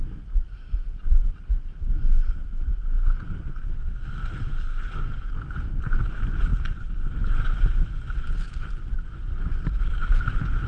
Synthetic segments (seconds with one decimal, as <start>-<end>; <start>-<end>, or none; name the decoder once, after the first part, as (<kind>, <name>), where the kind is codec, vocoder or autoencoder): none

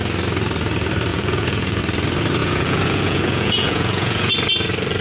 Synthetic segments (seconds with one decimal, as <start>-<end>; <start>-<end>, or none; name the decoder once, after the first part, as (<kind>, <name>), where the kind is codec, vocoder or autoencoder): 1.1-1.8 (vocoder, Vocos); 2.4-4.3

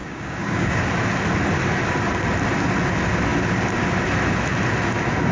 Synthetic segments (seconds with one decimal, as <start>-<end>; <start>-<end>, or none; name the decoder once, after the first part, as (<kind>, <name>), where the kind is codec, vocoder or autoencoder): 0.0-0.9 (codec, DAC)

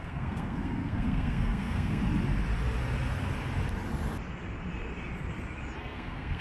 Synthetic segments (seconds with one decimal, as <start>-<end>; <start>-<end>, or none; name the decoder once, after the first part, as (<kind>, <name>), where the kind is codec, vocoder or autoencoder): 0.0-2.0 (codec, SNAC); 5.8-6.4

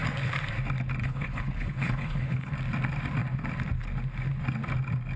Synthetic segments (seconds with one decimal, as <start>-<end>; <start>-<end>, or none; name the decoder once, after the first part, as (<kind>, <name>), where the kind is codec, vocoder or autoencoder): 1.0-2.5 (codec, HILCodec)